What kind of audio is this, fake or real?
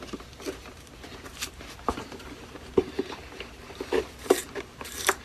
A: fake